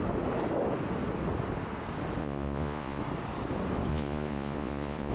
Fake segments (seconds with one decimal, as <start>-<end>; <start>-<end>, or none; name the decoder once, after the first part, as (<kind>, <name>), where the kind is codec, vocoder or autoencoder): 2.2-3.0 (vocoder, Vocos); 3.9-5.1